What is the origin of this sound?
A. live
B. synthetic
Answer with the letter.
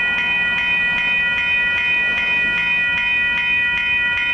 A